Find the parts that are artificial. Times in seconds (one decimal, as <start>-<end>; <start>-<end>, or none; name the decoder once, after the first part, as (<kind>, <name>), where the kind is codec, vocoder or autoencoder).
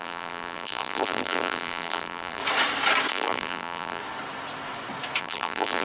0.0-2.4 (vocoder, BigVGAN v2); 3.1-4.0; 5.2-5.8